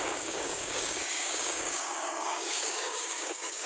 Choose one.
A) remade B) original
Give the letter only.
A